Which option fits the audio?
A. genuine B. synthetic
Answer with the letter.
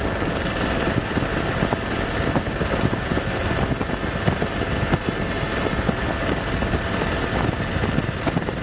A